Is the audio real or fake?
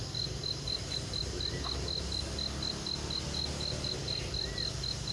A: real